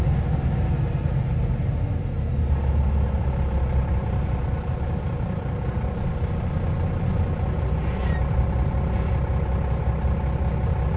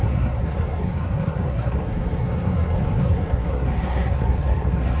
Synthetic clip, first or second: second